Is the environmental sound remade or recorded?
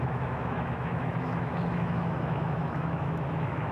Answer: remade